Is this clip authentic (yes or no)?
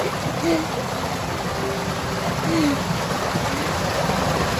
yes